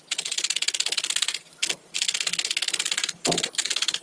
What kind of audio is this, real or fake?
real